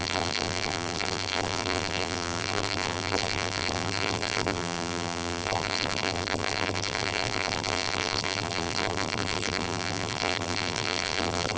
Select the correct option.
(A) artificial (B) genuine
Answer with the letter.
A